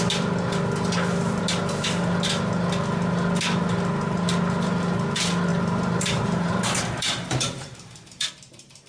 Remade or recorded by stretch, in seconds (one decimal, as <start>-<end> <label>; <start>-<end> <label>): 0.0-5.5 recorded; 5.5-8.3 remade; 8.3-8.9 recorded